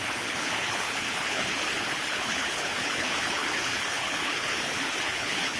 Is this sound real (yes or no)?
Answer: no